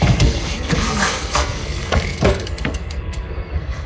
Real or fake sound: fake